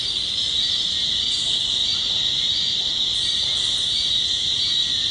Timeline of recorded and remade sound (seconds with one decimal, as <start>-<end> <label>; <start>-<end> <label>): 0.0-5.1 recorded